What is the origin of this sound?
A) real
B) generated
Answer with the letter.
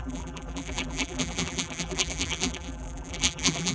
B